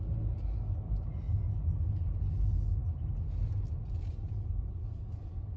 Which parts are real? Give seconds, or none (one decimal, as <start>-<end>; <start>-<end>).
0.0-5.6